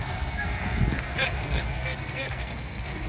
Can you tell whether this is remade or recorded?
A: remade